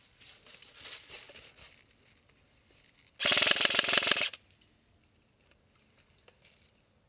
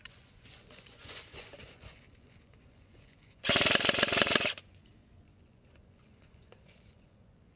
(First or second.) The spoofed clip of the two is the second